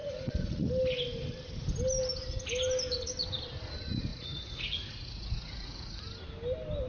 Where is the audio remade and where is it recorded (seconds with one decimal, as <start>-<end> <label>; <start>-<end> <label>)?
0.0-0.7 remade; 0.7-4.1 recorded; 4.1-6.0 remade; 6.0-6.9 recorded